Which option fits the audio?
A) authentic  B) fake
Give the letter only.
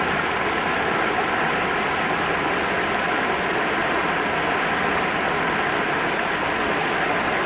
A